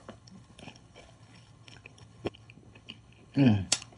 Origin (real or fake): fake